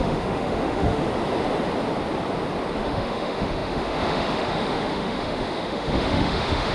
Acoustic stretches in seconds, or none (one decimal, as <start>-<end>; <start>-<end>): 1.0-2.8